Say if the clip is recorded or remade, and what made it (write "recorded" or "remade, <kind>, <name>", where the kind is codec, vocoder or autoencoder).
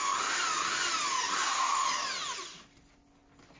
recorded